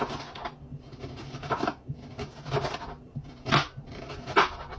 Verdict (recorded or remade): recorded